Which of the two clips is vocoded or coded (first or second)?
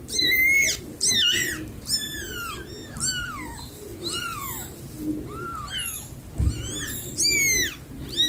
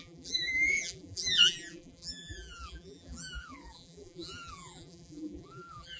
second